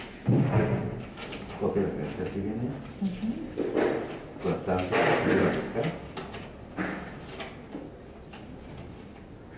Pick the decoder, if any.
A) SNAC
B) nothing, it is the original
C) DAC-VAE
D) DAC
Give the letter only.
B